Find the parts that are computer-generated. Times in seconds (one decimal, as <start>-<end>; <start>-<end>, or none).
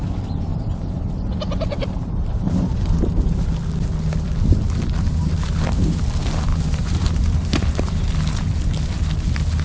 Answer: 0.5-3.2; 6.5-7.9